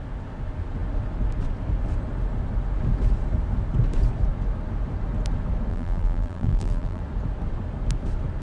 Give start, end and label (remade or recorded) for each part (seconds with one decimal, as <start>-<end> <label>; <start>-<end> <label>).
0.0-5.7 recorded; 5.7-7.0 remade; 7.0-8.4 recorded